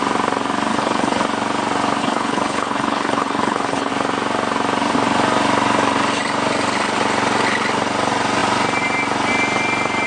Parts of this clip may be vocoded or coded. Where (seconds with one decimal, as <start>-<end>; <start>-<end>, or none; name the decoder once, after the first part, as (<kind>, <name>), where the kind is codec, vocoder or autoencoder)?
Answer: 0.7-1.2 (codec, HILCodec); 2.0-3.9